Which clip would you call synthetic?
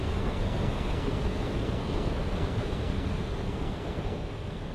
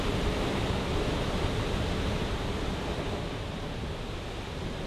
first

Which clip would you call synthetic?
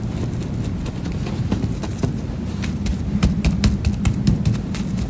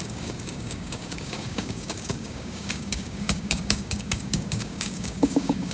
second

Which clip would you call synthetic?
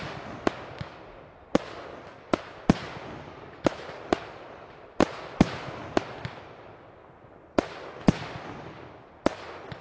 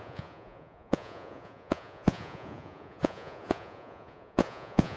second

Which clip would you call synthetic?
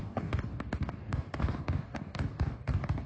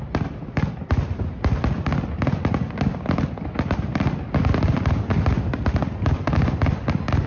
first